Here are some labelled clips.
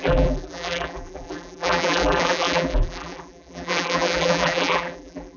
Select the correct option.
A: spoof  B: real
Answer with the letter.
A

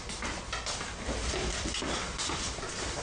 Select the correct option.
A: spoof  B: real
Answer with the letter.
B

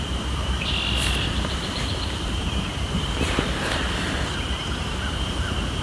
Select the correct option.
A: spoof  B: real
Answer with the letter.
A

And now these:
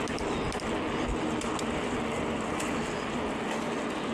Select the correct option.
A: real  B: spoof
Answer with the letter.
A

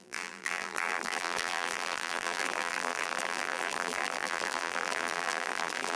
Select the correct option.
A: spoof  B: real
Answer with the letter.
A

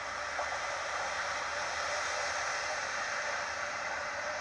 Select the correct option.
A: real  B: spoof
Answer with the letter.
B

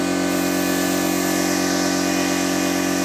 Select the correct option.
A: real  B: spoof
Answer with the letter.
A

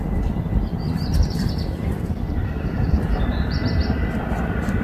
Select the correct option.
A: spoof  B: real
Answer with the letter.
A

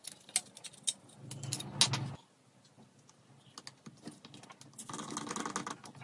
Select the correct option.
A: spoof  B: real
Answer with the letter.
B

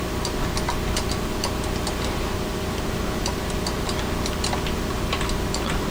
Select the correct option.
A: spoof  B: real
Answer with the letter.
B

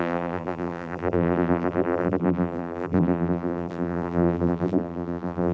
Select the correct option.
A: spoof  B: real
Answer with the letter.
A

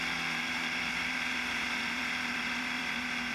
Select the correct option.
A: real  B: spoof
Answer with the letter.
B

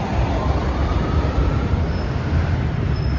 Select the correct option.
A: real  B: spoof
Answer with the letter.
A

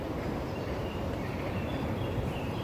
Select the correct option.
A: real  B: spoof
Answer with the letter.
B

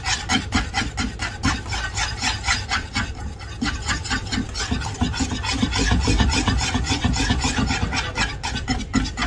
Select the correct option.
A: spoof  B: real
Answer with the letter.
B